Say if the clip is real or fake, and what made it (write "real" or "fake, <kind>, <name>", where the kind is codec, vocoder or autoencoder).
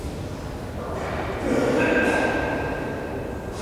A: real